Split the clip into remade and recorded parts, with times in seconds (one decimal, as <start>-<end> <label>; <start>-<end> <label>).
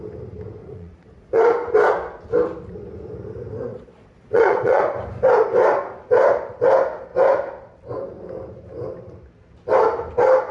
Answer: 0.0-0.6 recorded; 0.6-1.5 remade; 1.5-3.7 recorded; 3.7-4.8 remade; 4.8-10.5 recorded